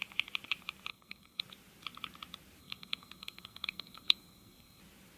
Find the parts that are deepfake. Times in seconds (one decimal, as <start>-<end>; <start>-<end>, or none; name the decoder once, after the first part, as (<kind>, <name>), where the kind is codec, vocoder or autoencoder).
0.9-1.4 (codec, SNAC); 2.6-4.8